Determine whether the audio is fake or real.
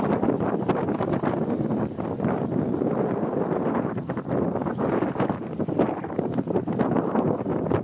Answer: real